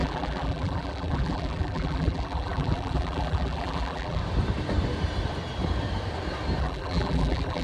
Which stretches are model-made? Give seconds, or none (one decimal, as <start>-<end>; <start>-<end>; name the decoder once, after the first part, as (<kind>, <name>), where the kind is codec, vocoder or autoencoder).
0.0-4.2 (vocoder, BigVGAN v2); 6.6-7.6